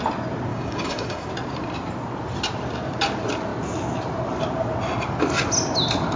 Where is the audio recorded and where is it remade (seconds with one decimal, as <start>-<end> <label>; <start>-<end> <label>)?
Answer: 0.0-0.5 recorded; 0.5-1.3 remade; 1.3-6.2 recorded

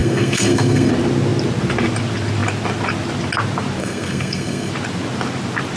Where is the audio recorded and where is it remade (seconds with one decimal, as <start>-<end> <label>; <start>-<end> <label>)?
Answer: 0.0-0.9 remade; 0.9-3.8 recorded; 3.8-4.7 remade; 4.7-5.8 recorded